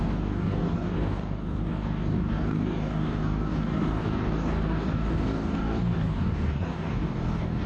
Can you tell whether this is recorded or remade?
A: remade